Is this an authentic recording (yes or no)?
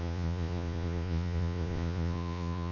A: no